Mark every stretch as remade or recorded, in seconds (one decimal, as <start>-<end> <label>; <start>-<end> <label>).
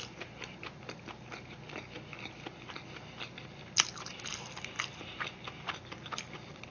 0.0-6.7 recorded